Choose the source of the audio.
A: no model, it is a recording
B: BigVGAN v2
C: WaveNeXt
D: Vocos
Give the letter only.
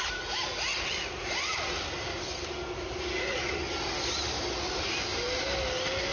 A